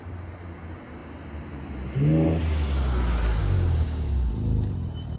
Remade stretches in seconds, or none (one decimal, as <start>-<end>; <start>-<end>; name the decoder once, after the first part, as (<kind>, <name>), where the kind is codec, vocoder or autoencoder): 3.4-4.3 (codec, DAC)